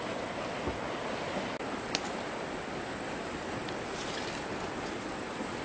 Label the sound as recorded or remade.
recorded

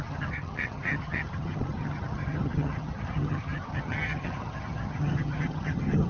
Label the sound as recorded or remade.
remade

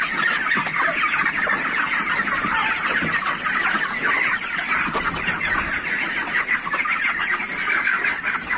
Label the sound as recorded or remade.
recorded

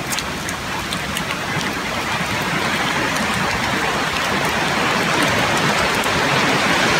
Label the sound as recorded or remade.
recorded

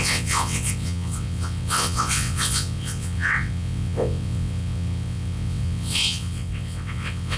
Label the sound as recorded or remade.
remade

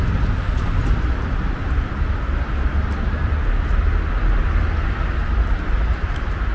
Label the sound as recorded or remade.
recorded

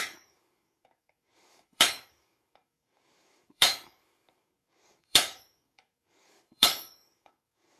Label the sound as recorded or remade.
remade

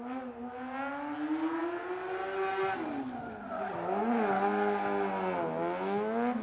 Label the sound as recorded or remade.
recorded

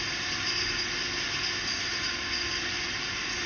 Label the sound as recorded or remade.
recorded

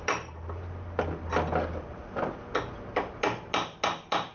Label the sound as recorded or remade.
recorded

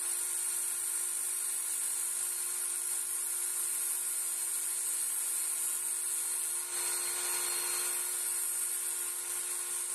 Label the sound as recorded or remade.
recorded